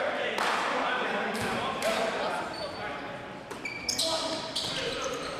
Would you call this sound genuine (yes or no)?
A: no